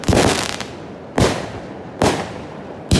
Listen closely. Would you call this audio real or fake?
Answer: real